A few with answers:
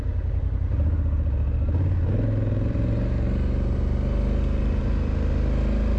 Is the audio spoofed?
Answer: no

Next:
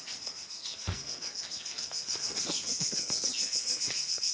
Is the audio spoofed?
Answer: yes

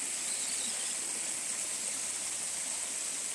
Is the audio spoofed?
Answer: no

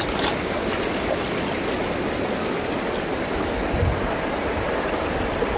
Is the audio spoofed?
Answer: no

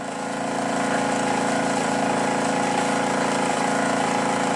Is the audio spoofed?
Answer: no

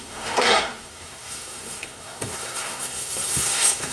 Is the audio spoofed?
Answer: yes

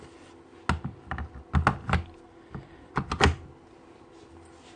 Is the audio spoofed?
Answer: no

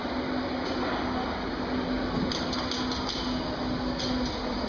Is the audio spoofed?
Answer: no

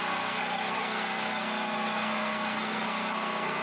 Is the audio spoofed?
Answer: yes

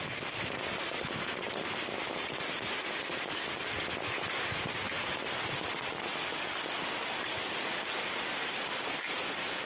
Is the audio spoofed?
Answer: no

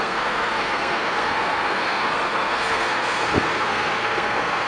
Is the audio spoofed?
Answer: yes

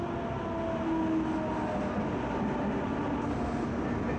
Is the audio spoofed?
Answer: no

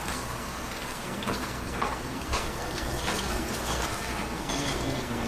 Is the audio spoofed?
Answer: yes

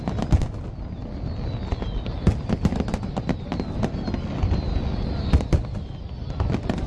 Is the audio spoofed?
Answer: no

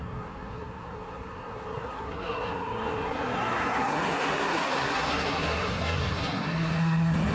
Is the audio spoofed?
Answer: yes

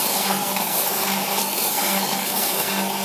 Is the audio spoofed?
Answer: yes